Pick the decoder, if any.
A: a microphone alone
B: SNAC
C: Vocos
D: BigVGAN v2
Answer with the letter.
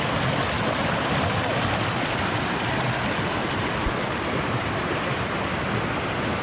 A